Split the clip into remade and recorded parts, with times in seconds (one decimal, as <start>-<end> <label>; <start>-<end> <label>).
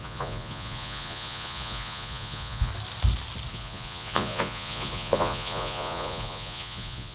0.0-2.7 remade; 2.7-3.5 recorded; 3.5-7.1 remade